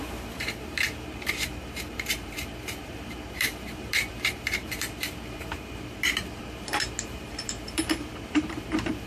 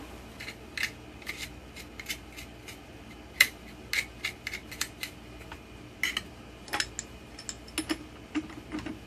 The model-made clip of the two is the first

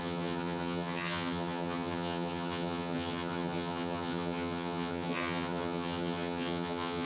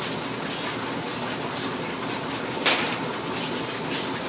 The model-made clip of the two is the first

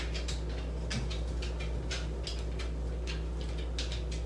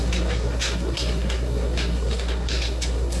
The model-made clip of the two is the second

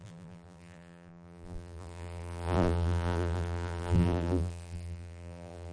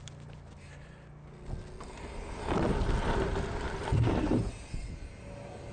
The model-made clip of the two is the first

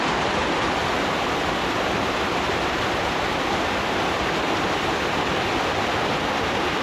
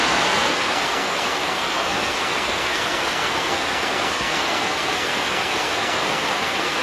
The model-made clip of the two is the second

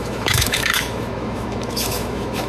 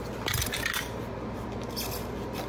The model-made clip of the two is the first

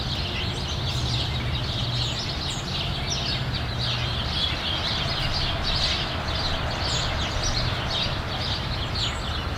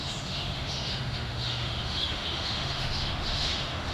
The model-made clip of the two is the second